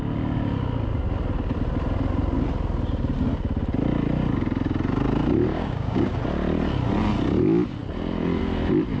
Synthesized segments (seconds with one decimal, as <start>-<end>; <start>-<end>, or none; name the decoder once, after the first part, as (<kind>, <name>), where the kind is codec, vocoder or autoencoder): 5.5-6.2 (codec, DAC)